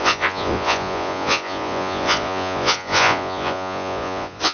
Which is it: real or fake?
fake